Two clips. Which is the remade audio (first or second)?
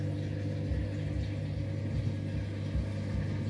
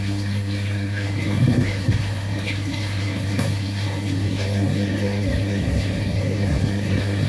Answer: second